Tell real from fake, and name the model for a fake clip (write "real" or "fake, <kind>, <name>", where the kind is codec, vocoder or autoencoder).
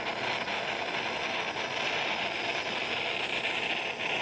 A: real